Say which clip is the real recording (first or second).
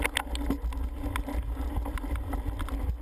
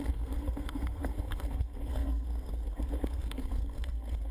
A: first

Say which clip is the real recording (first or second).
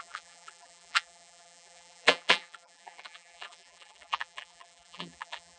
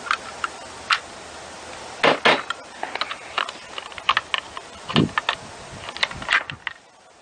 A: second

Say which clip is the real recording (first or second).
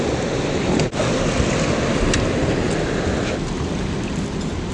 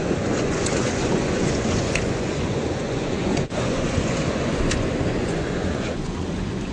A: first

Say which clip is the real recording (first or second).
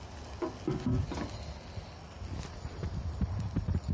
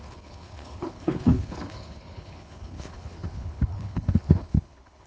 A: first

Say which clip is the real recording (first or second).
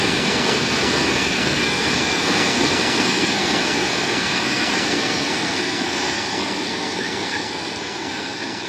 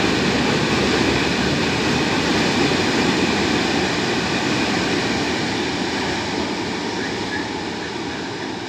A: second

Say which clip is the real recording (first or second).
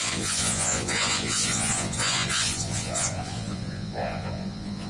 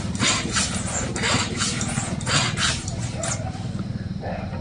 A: second